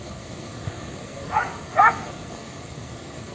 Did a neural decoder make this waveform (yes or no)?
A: yes